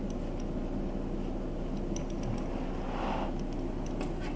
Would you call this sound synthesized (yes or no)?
no